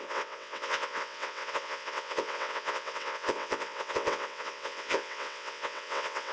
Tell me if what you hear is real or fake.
fake